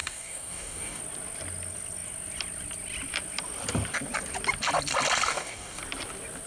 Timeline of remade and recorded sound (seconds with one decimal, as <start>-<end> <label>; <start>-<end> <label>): 0.0-1.0 remade; 1.0-5.3 recorded; 5.3-5.8 remade; 5.8-6.5 recorded